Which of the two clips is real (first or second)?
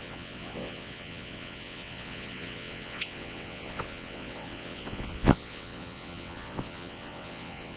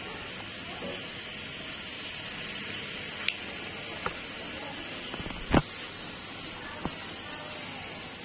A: second